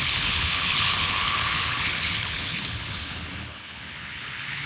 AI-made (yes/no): yes